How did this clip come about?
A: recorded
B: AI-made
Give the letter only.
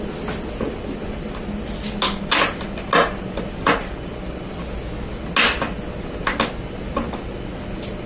A